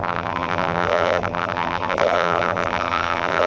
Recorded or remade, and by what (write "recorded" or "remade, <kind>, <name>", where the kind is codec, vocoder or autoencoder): remade, vocoder, BigVGAN v2